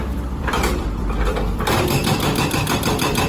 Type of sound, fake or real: fake